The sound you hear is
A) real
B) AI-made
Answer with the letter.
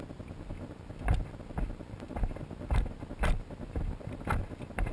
A